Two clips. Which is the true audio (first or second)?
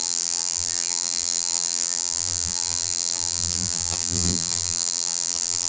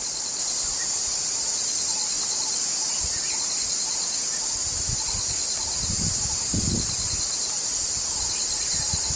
second